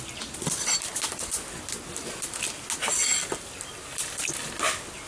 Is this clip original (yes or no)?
yes